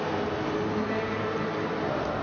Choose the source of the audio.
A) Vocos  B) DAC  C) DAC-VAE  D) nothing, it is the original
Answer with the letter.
D